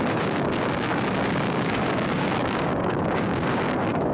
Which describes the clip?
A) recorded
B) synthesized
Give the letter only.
B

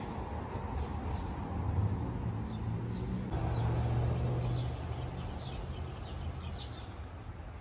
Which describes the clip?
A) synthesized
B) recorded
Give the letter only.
B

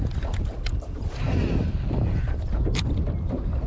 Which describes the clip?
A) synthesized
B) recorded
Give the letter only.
B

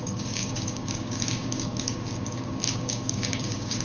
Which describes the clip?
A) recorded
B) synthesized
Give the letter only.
B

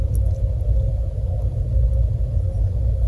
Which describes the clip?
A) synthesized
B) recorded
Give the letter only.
B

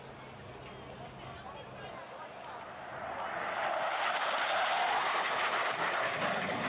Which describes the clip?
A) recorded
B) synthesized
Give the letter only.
A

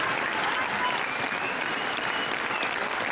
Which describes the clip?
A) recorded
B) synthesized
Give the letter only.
A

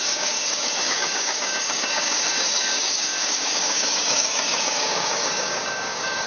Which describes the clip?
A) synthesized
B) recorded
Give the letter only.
A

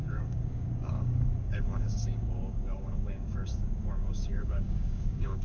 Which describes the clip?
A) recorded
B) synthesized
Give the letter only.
B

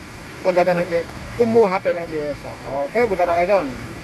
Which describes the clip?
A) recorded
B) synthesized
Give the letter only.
B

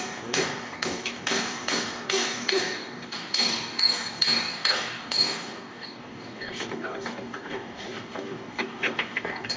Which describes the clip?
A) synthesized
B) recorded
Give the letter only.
A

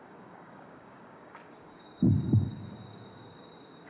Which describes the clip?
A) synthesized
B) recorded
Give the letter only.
A